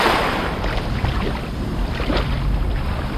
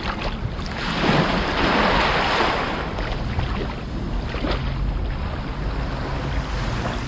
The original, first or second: second